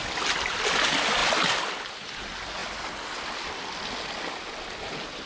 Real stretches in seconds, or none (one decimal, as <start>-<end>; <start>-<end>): 0.0-5.3